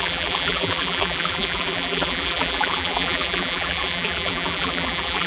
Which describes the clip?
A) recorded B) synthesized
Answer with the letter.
B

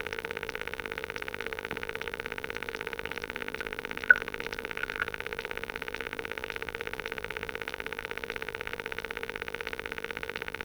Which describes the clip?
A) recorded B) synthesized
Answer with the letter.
B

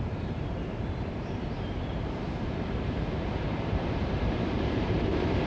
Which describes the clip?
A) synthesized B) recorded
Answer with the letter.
A